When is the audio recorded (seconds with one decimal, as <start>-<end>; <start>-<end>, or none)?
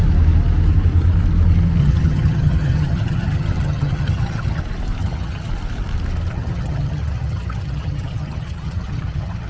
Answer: 0.0-1.8; 4.6-5.0; 5.5-6.3